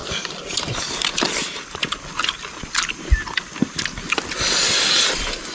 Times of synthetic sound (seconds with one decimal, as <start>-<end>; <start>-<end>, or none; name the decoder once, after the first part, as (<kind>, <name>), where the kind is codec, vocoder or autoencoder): none